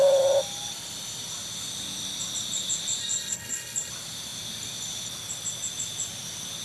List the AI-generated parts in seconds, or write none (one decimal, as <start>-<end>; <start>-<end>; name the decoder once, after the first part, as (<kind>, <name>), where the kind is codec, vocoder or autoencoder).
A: 3.0-3.9 (codec, HILCodec)